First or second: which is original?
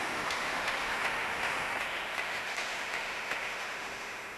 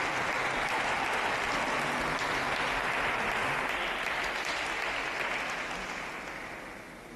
second